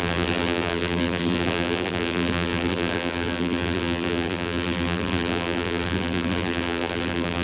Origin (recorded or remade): remade